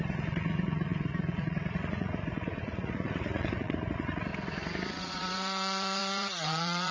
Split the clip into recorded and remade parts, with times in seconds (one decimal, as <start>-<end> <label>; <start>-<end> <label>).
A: 0.0-4.3 remade; 4.3-4.9 recorded; 4.9-6.9 remade